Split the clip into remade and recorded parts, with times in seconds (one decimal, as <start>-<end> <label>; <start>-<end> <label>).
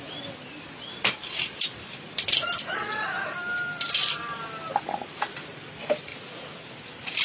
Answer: 0.0-6.1 recorded; 6.1-6.7 remade; 6.7-7.2 recorded